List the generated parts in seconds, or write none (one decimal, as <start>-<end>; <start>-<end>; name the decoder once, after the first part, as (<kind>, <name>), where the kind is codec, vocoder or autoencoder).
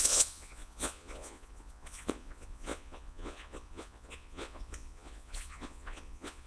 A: 0.0-6.5 (vocoder, Vocos)